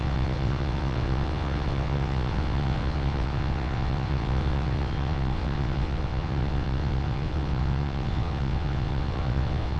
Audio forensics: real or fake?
fake